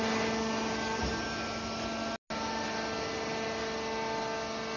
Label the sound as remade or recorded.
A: recorded